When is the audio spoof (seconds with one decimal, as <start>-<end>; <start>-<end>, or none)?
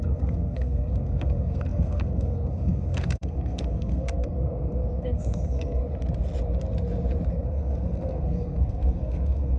0.0-5.8; 7.3-9.6